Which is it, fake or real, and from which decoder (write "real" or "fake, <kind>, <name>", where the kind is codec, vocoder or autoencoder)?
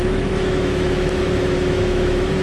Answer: fake, autoencoder, DAC-VAE